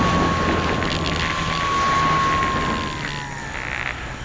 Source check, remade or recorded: recorded